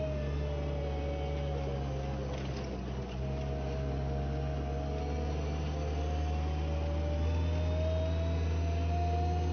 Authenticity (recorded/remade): recorded